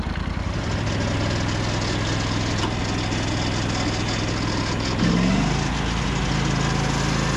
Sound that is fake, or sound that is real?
real